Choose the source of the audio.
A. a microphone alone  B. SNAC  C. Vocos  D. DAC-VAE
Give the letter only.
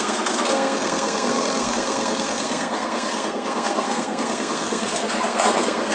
B